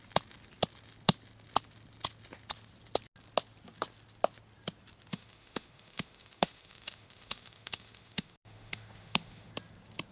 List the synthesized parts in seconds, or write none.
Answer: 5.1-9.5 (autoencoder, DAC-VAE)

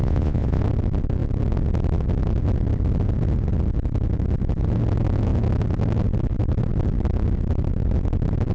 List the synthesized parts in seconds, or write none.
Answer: 0.0-0.6 (vocoder, Vocos)

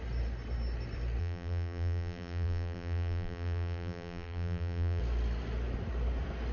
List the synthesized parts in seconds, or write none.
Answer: 1.2-5.0 (vocoder, BigVGAN v2)

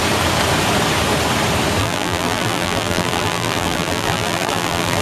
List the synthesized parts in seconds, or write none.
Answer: 1.8-5.0 (vocoder, BigVGAN v2)